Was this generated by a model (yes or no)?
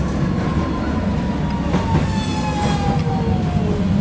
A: no